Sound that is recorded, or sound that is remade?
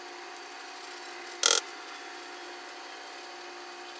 recorded